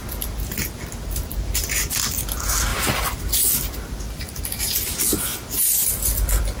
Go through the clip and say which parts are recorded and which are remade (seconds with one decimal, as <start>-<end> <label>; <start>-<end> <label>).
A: 0.0-2.7 recorded; 2.7-4.4 remade; 4.4-6.6 recorded